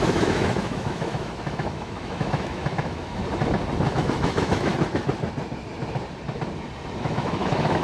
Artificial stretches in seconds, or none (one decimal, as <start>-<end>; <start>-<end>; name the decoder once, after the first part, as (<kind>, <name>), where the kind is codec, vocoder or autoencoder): 0.0-3.2 (autoencoder, DAC-VAE); 3.9-4.7; 7.0-7.8